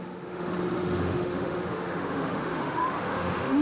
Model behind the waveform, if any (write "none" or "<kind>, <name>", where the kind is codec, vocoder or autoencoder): autoencoder, DAC-VAE